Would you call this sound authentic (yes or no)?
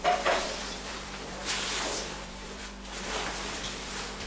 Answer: no